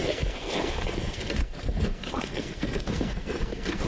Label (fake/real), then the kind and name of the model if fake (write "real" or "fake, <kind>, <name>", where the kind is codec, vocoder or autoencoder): fake, codec, SNAC